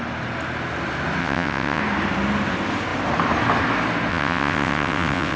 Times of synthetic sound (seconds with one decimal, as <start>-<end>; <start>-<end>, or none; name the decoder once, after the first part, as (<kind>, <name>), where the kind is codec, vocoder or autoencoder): 1.2-1.8 (vocoder, WaveNeXt); 4.1-5.4